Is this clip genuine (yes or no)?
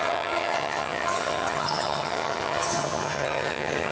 no